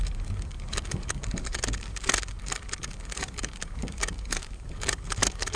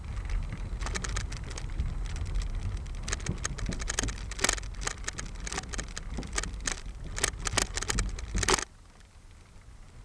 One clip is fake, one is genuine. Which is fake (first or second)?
first